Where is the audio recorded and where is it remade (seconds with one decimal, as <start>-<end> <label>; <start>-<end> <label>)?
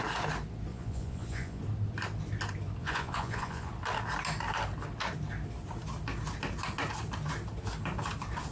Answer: 0.0-0.7 recorded; 0.7-1.6 remade; 1.6-2.8 recorded; 2.8-3.7 remade; 3.7-8.5 recorded